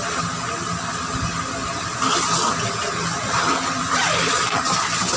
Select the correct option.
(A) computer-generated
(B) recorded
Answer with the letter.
B